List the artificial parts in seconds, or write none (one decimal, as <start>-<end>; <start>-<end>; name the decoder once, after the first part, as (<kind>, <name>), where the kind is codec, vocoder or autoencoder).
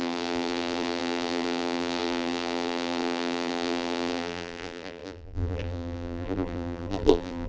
0.0-7.5 (vocoder, BigVGAN v2)